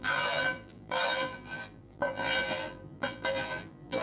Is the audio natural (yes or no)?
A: no